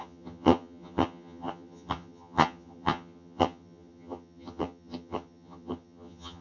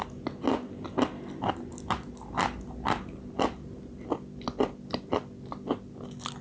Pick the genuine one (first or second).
second